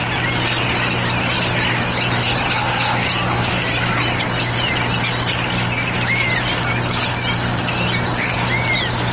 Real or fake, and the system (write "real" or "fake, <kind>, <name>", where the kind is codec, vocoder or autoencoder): real